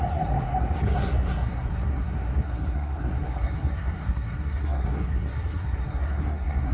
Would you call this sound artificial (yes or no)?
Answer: yes